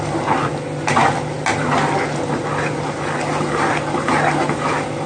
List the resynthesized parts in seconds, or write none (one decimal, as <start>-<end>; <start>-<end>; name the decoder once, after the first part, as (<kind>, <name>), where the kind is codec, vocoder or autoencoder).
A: none